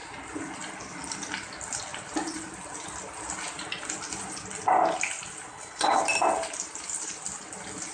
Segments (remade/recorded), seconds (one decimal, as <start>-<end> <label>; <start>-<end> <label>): 0.0-5.5 recorded; 5.5-6.0 remade; 6.0-7.9 recorded